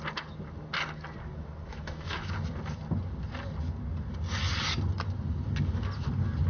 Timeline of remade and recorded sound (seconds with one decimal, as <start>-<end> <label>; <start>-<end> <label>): 0.0-1.7 recorded; 1.7-2.3 remade; 2.3-6.5 recorded